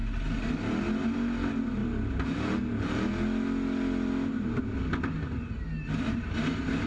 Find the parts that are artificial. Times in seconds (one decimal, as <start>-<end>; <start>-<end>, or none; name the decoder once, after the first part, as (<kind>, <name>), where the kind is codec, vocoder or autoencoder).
none